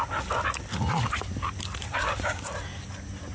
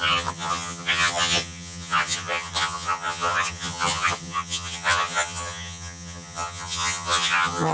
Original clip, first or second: first